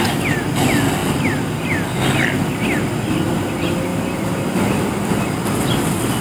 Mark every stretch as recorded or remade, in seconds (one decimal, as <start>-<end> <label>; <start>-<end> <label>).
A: 0.0-6.2 recorded

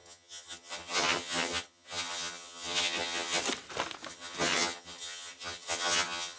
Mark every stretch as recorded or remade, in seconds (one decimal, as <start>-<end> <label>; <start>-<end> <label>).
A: 0.0-3.4 remade; 3.4-4.1 recorded; 4.1-6.4 remade